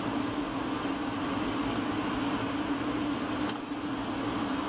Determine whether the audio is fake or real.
real